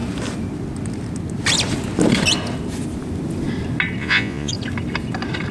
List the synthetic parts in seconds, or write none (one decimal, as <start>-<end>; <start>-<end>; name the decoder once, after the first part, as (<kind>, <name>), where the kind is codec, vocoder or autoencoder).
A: 4.0-4.5 (vocoder, Vocos)